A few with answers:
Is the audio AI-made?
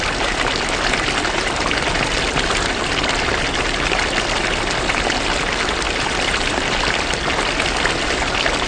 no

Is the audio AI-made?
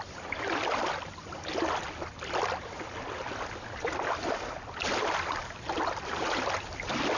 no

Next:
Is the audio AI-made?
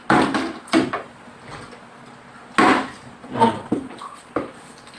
no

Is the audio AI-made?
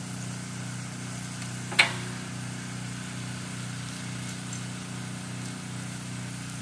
no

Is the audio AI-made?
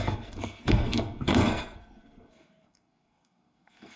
yes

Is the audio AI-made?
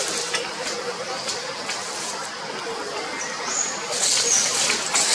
no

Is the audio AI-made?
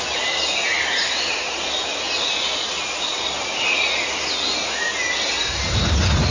no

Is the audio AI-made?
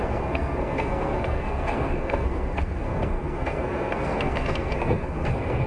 yes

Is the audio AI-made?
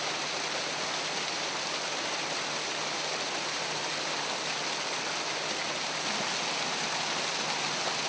no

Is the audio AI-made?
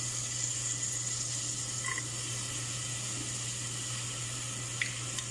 no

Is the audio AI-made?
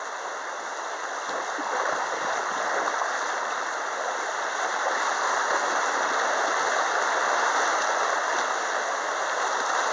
no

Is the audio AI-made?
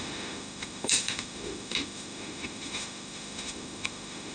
yes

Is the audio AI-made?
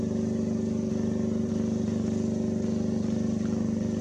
no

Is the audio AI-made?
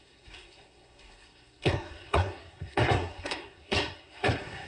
yes